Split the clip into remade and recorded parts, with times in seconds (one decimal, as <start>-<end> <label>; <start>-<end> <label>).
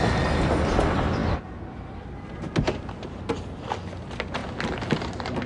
0.0-5.5 recorded